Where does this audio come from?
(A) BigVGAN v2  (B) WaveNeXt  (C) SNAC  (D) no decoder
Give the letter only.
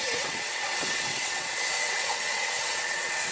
B